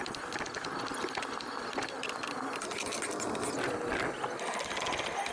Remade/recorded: recorded